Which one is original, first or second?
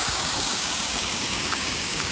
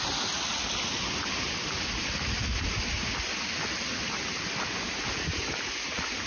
second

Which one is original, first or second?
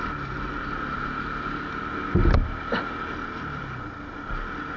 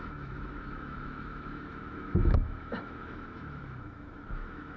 first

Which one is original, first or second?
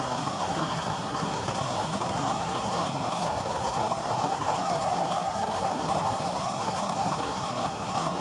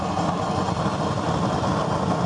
second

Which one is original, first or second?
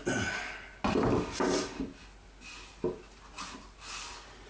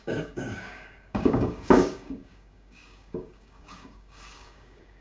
first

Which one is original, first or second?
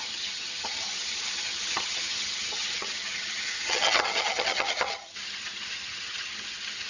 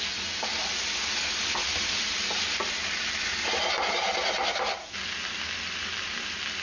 second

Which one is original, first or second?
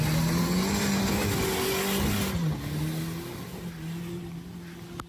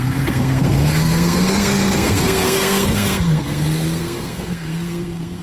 first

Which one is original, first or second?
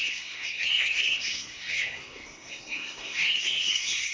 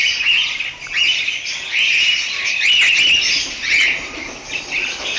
second